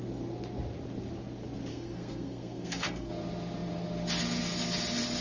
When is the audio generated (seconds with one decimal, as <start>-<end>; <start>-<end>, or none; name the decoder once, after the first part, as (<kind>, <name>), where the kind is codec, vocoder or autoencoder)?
1.7-3.1 (codec, SNAC)